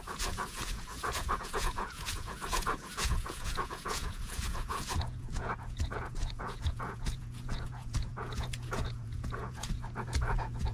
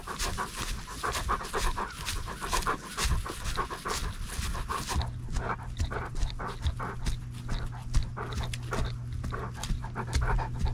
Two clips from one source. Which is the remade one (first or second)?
first